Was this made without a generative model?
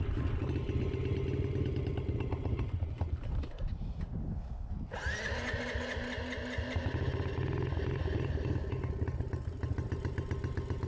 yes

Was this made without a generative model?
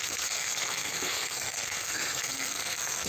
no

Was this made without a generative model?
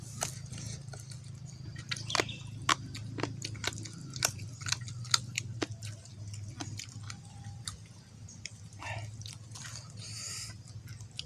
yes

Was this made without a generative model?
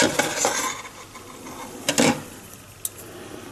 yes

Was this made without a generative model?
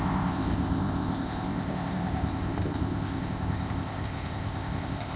no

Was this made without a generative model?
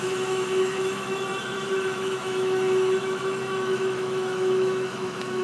no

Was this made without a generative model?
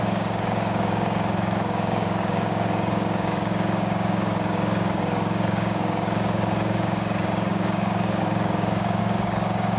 no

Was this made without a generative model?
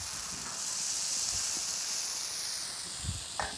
yes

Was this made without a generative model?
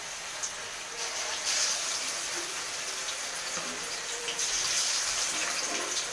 no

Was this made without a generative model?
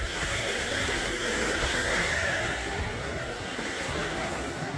no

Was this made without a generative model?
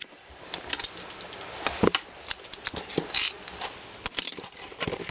yes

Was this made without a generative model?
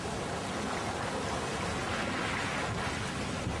yes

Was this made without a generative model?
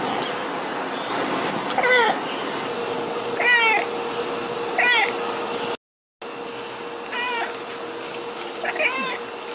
yes